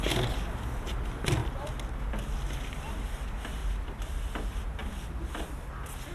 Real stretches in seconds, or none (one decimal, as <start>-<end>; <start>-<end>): 0.0-3.6; 4.2-4.8; 5.4-6.1